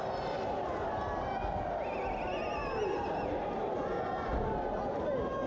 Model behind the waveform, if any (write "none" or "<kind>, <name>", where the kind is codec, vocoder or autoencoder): none